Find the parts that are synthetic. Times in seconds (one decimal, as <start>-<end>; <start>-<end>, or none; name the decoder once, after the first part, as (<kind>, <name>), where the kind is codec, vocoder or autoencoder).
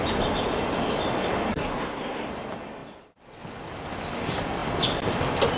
1.5-2.3 (codec, SNAC)